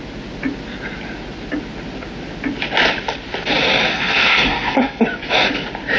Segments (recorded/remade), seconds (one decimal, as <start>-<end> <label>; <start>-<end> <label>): 0.0-3.9 recorded; 3.9-5.0 remade; 5.0-6.0 recorded